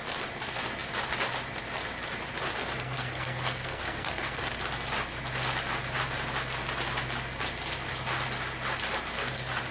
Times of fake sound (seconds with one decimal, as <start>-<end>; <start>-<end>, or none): 2.6-4.4